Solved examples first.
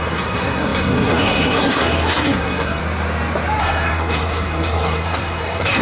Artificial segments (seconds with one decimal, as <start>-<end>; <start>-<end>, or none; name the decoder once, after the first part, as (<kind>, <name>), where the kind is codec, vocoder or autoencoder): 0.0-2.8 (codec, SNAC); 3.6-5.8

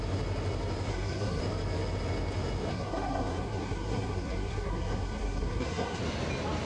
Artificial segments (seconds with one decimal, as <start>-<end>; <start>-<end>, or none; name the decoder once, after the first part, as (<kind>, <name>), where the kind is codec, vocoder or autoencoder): 0.9-1.4 (codec, SNAC); 2.7-6.0

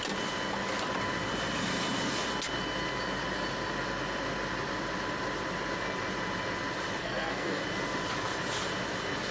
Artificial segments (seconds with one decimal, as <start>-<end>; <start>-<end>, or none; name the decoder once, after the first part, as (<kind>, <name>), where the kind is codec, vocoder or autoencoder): 7.0-7.6 (codec, SNAC)

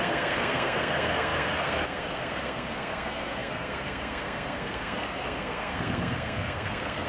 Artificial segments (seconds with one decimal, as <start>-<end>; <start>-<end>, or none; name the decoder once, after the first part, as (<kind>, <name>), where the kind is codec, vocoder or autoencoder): 0.0-7.1 (codec, SNAC)